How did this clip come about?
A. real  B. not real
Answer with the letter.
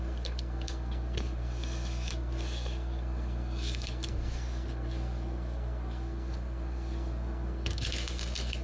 B